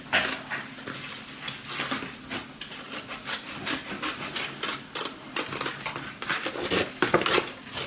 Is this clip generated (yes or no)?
no